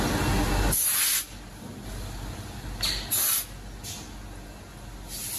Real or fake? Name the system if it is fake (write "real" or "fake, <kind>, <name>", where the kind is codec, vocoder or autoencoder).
real